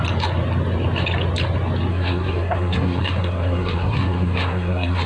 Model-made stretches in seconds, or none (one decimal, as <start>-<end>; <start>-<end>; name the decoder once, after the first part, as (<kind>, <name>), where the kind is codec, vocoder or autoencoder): 1.9-5.1 (codec, SNAC)